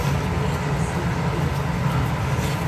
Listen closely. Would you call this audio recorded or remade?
recorded